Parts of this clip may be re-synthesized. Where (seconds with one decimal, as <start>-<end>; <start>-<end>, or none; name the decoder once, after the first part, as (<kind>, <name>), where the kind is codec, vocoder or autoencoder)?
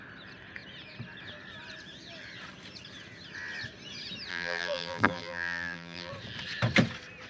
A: 4.3-6.1 (vocoder, BigVGAN v2)